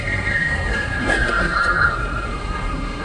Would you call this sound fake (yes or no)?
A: yes